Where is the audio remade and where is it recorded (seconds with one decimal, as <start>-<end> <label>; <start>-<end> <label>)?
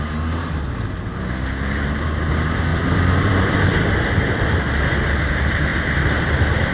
0.0-2.7 recorded; 2.7-4.6 remade; 4.6-5.7 recorded; 5.7-6.3 remade; 6.3-6.7 recorded